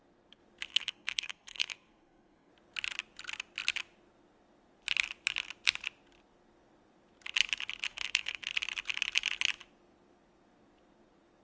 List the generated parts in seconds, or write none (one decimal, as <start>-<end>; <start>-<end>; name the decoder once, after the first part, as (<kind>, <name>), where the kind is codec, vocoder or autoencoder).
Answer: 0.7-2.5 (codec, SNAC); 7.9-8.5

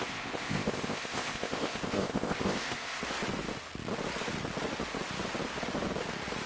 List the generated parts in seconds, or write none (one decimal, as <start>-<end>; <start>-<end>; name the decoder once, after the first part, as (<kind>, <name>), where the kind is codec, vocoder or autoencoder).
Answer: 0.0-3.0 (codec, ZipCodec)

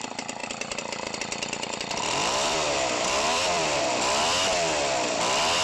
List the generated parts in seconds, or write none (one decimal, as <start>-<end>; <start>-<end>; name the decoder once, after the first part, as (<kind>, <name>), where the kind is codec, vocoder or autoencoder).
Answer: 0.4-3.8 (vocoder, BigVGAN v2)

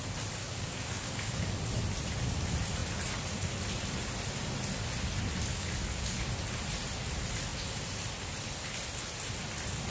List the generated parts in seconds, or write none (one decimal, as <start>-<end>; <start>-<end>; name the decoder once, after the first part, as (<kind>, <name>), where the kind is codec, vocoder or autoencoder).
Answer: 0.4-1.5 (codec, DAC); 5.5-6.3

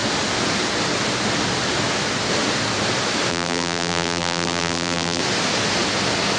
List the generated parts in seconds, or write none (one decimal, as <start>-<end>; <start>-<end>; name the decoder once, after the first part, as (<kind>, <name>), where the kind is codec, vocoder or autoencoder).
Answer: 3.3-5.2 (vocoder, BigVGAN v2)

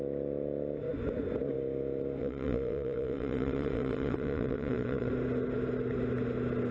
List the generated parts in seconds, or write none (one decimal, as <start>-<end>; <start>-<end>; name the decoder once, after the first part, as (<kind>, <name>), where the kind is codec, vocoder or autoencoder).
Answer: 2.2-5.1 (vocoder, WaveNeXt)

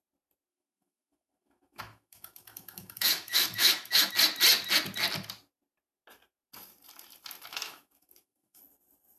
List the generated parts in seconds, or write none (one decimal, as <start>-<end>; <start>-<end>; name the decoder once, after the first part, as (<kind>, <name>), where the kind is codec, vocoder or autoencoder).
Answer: 0.5-4.1 (autoencoder, DAC-VAE); 7.5-8.6